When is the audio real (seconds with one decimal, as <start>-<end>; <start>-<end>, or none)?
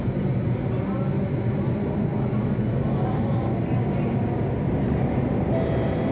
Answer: 0.0-6.1